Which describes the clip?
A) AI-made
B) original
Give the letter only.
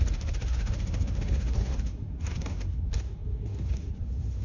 A